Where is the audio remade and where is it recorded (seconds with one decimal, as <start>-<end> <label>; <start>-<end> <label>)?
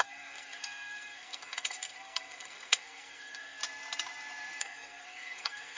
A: 0.0-3.6 remade; 3.6-4.6 recorded; 4.6-5.8 remade